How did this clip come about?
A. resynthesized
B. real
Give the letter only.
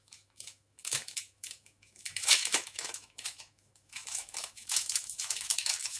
A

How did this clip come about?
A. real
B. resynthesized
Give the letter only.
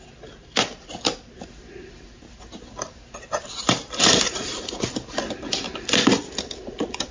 A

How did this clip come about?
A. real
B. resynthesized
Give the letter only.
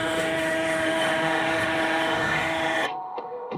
B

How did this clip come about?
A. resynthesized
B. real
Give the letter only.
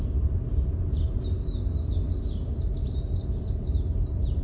B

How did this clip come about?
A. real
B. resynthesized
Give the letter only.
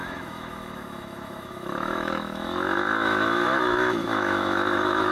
B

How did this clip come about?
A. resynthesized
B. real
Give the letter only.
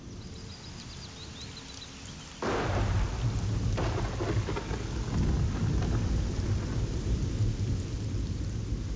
B